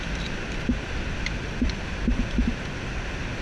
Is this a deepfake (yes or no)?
yes